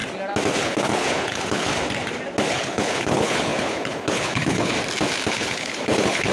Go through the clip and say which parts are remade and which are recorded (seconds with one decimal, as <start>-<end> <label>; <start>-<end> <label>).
0.0-0.6 recorded; 0.6-1.7 remade; 1.7-2.5 recorded; 2.5-4.7 remade; 4.7-5.3 recorded; 5.3-6.3 remade